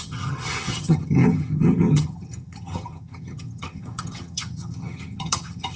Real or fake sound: fake